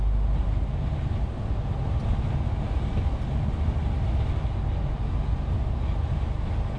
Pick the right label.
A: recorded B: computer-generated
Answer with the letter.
A